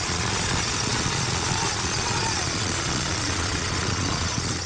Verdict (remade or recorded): remade